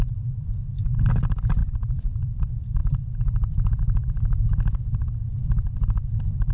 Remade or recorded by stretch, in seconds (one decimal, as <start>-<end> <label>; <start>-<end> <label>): 0.0-1.6 recorded; 1.6-2.4 remade; 2.4-6.5 recorded